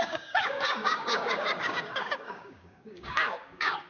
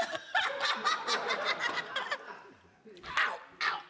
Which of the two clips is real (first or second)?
second